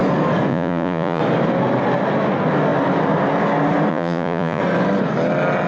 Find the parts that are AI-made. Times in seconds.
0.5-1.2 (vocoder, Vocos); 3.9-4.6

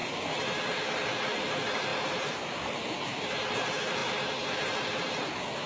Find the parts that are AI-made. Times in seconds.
0.0-0.8 (vocoder, BigVGAN v2); 1.9-3.3; 4.0-5.7